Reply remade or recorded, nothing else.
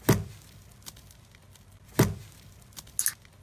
recorded